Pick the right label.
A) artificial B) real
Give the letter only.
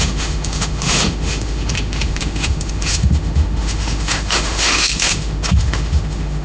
A